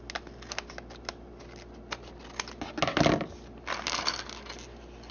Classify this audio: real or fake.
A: real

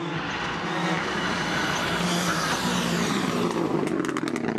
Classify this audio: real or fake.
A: real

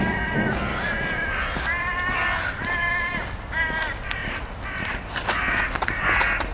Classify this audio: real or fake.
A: real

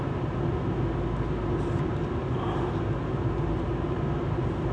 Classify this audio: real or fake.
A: real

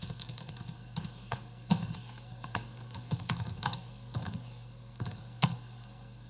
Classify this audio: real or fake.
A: fake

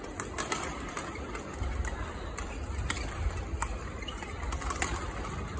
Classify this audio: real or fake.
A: fake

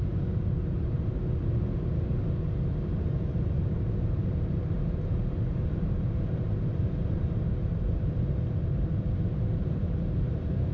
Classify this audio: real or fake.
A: fake